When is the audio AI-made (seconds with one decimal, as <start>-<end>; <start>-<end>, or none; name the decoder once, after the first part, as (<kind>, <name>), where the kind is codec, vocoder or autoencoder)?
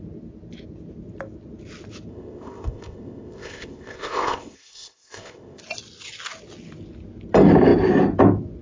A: 2.1-5.6 (codec, ZipCodec)